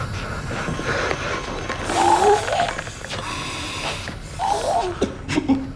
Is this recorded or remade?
recorded